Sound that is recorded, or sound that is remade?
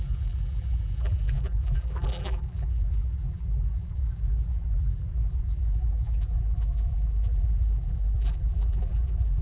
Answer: remade